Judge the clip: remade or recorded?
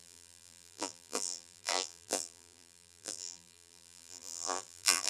remade